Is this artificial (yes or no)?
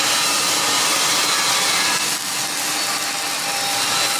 no